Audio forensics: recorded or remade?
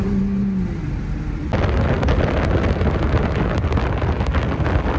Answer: recorded